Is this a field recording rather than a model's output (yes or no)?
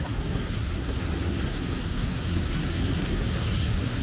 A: no